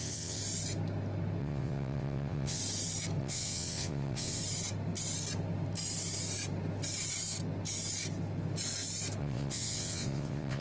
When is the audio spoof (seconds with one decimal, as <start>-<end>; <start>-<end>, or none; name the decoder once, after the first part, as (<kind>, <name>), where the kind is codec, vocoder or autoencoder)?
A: 0.0-0.4 (vocoder, WaveNeXt); 1.4-2.6; 3.2-4.4; 9.2-10.6